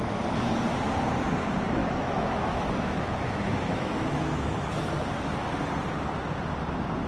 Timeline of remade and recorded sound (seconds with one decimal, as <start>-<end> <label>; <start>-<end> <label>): 0.0-1.8 recorded; 1.8-4.8 remade; 4.8-7.1 recorded